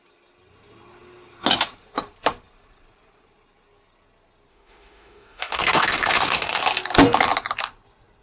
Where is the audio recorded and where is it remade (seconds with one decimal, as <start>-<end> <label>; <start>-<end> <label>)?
0.0-4.5 recorded; 4.5-6.6 remade; 6.6-8.2 recorded